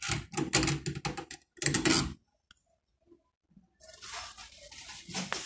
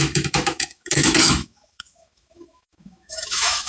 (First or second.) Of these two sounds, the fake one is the second